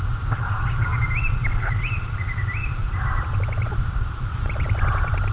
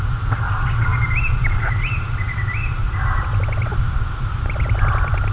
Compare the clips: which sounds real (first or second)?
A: second